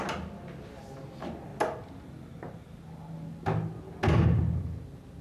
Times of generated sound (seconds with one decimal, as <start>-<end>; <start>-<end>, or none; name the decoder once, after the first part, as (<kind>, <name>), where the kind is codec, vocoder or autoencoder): none